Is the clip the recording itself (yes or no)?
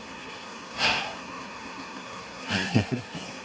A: no